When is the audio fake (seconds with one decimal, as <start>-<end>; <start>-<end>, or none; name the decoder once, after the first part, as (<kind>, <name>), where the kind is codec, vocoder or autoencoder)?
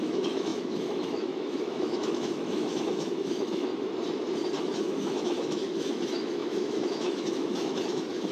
0.0-3.7 (autoencoder, DAC-VAE); 4.6-8.3